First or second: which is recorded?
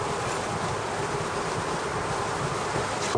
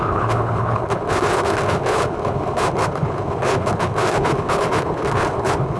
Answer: first